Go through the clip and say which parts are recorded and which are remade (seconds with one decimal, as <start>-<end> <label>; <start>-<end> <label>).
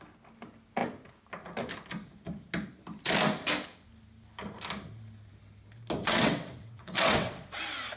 0.0-6.0 recorded; 6.0-7.6 remade; 7.6-8.0 recorded